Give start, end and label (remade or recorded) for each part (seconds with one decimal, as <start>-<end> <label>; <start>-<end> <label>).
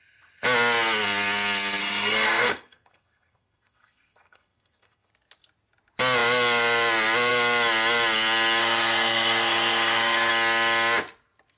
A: 0.0-1.8 recorded; 1.8-5.1 remade; 5.1-8.6 recorded; 8.6-10.3 remade; 10.3-11.6 recorded